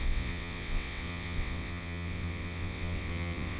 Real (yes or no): no